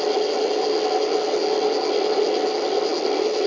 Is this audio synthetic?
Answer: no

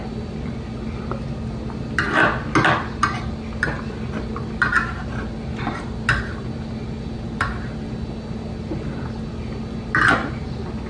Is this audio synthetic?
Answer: no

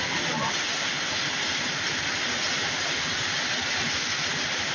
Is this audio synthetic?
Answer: no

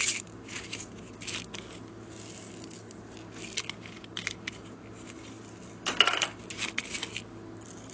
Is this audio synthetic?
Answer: no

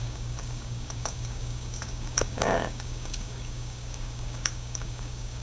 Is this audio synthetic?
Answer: yes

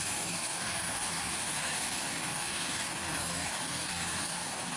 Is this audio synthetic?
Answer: yes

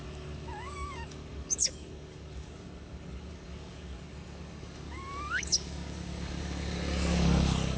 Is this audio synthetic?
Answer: yes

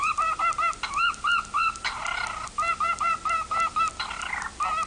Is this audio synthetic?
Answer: no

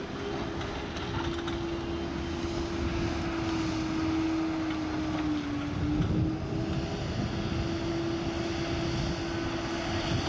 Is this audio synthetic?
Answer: no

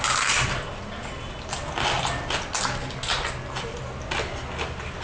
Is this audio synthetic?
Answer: no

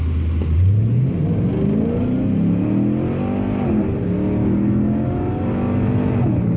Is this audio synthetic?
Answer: no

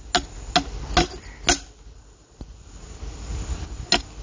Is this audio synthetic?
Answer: no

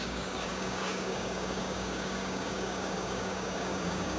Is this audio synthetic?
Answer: yes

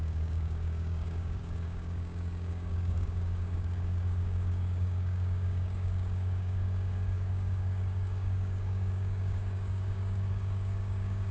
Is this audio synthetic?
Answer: yes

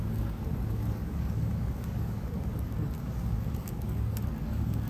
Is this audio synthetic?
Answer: yes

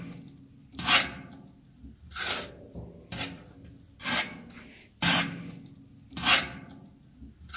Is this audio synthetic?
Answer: no